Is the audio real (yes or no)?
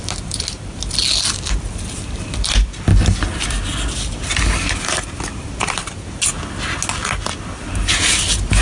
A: yes